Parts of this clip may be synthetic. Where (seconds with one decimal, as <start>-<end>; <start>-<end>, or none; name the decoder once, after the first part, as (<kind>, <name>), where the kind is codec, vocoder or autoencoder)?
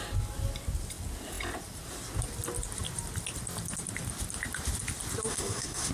5.3-5.9 (autoencoder, DAC-VAE)